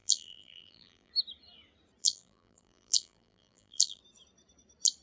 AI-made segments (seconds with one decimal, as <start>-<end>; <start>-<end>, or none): 0.0-1.1; 2.0-4.0